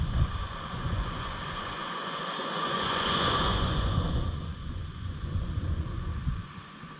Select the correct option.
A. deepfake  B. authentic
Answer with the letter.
A